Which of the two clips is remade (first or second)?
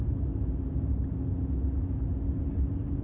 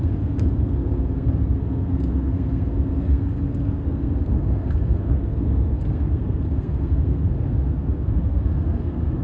second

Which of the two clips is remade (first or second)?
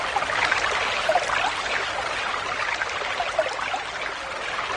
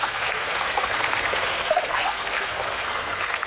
second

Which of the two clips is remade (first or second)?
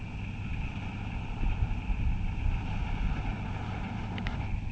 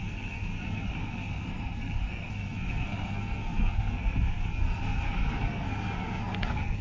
second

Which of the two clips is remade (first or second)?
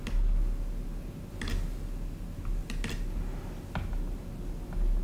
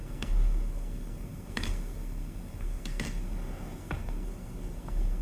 second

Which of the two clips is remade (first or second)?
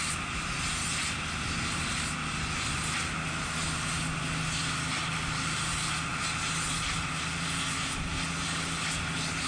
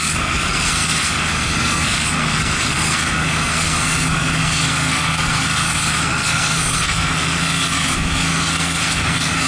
second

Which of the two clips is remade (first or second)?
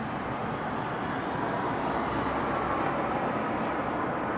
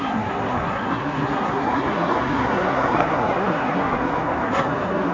second